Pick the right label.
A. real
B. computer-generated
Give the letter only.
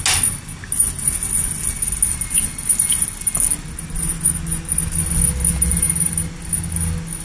A